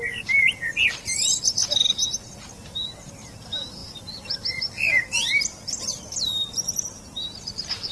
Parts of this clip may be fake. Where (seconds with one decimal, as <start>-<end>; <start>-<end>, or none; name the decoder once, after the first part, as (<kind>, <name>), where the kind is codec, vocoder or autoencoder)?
none